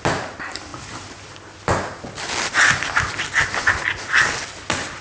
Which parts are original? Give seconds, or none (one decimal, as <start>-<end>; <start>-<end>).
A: 0.0-5.0